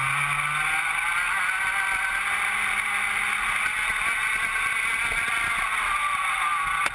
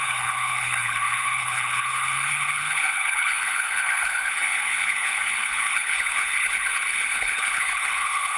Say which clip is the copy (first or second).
second